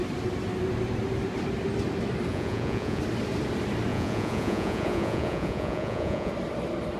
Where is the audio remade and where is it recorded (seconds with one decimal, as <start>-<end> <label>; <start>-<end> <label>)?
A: 0.0-2.3 recorded; 2.3-3.0 remade; 3.0-3.9 recorded; 3.9-6.3 remade; 6.3-7.0 recorded